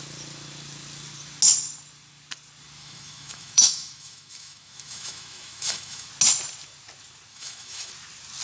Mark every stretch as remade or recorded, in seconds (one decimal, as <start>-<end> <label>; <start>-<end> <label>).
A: 0.0-2.8 recorded; 2.8-6.1 remade; 6.1-7.3 recorded; 7.3-7.9 remade; 7.9-8.4 recorded

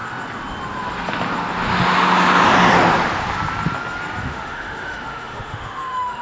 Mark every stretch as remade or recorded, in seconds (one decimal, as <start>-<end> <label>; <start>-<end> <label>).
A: 0.0-4.2 recorded; 4.2-6.2 remade

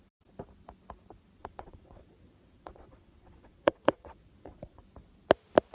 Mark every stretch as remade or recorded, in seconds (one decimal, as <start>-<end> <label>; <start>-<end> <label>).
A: 0.0-1.4 recorded; 1.4-4.8 remade; 4.8-5.7 recorded

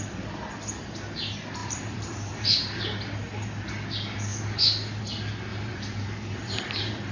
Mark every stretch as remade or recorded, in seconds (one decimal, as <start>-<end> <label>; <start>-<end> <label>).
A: 0.0-1.6 recorded; 1.6-2.8 remade; 2.8-5.5 recorded; 5.5-7.1 remade

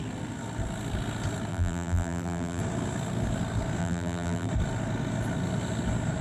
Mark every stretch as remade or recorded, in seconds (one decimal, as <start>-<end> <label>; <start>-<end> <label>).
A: 0.0-1.5 recorded; 1.5-2.6 remade; 2.6-3.8 recorded; 3.8-4.5 remade; 4.5-6.2 recorded

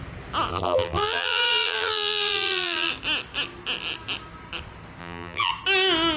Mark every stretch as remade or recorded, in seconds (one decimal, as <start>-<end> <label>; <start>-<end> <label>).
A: 0.0-0.5 recorded; 0.5-2.9 remade; 2.9-5.0 recorded; 5.0-5.5 remade; 5.5-6.2 recorded